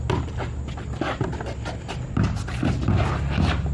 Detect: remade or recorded recorded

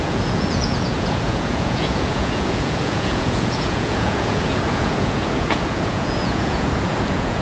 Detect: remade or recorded remade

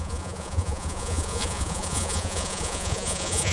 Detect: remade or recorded remade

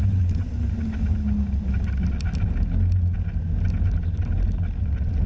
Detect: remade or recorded recorded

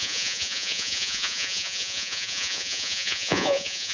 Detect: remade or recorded remade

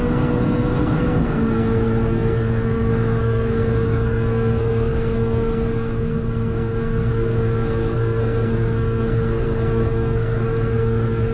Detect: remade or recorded remade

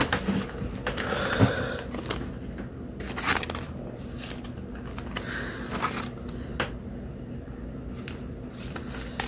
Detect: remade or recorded recorded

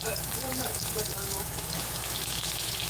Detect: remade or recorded remade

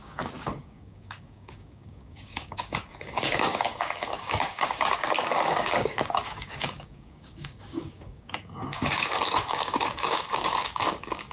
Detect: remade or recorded remade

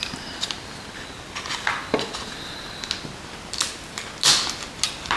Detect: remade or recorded recorded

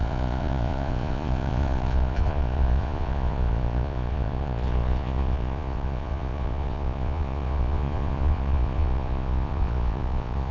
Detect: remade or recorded remade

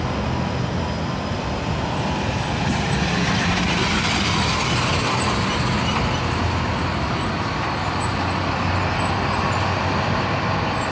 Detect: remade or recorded recorded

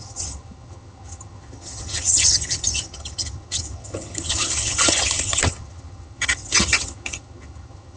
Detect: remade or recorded remade